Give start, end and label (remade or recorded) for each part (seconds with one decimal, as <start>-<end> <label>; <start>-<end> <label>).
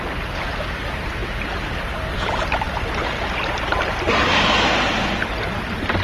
0.0-6.0 recorded